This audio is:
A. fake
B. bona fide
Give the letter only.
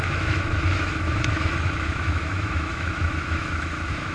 A